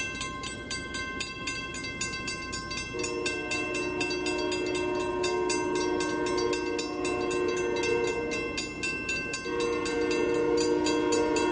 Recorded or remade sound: recorded